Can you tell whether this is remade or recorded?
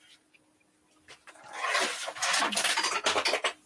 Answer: recorded